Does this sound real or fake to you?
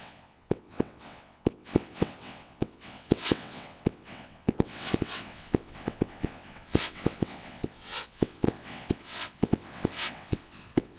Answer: fake